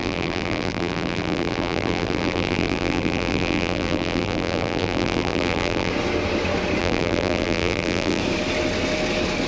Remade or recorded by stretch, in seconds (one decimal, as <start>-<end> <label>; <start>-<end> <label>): 0.0-5.9 remade; 5.9-6.8 recorded; 6.8-8.2 remade; 8.2-9.5 recorded